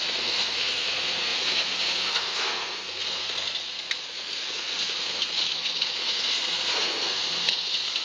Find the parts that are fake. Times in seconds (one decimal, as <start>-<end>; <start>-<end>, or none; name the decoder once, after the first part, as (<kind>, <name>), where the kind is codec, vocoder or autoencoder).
0.0-8.0 (codec, SNAC)

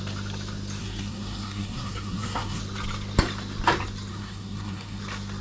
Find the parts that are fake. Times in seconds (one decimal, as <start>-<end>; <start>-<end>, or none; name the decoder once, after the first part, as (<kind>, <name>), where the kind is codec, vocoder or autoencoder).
0.8-2.6 (codec, SNAC); 4.1-5.0

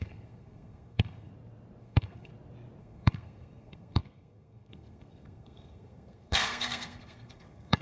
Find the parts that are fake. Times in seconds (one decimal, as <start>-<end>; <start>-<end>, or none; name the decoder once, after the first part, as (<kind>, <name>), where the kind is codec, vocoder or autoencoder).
0.0-1.3 (codec, SNAC); 1.8-2.3; 2.8-7.8